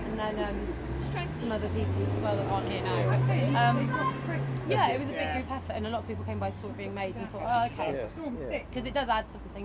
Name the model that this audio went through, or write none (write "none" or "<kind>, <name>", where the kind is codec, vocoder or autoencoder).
none